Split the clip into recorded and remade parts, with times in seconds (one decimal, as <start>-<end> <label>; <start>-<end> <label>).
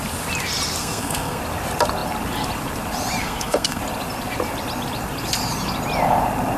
0.0-0.8 recorded; 0.8-1.4 remade; 1.4-3.2 recorded; 3.2-3.8 remade; 3.8-6.6 recorded